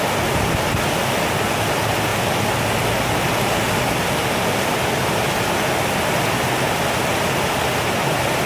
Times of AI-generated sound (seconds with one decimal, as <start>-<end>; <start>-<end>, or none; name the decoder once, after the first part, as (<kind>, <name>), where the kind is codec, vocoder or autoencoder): none